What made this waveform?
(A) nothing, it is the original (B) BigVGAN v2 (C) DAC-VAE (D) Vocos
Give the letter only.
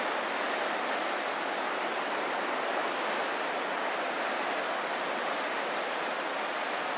A